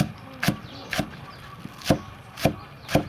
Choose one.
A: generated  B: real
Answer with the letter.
B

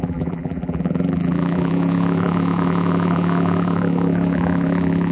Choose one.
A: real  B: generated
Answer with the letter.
B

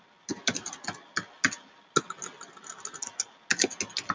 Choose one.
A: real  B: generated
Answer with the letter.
A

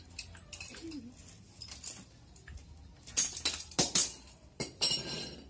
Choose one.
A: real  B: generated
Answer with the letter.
A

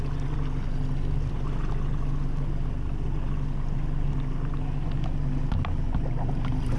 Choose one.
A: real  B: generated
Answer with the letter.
A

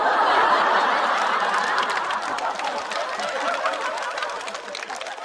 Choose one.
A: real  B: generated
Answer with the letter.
A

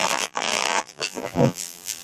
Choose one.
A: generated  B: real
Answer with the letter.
A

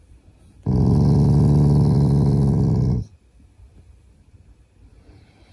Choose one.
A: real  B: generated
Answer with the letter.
B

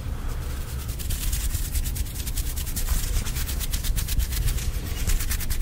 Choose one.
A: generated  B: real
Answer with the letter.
A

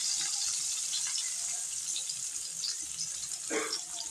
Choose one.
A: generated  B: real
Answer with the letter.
B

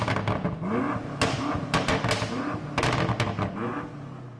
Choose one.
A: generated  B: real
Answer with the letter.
B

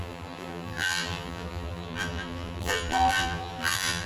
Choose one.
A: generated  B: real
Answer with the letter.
A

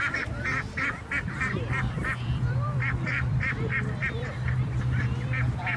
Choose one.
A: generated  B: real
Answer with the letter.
A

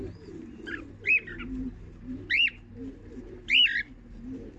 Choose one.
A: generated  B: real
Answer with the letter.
B